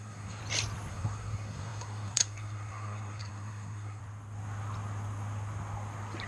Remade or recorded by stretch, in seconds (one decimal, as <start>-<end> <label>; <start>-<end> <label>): 0.0-0.4 remade; 0.4-0.9 recorded; 0.9-4.0 remade; 4.0-6.3 recorded